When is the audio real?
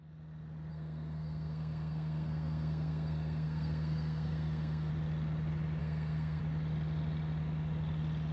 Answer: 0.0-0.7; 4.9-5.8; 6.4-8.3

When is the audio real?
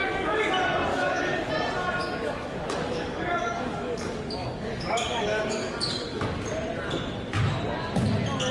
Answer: 0.5-0.9; 1.5-2.0; 6.4-8.5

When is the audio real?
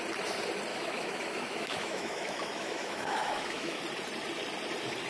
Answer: 0.0-0.7; 3.8-5.1